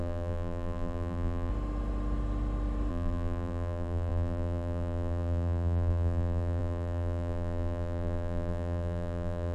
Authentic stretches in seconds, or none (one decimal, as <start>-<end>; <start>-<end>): 1.5-2.9